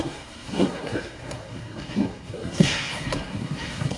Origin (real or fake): fake